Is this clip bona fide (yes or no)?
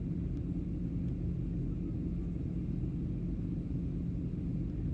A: yes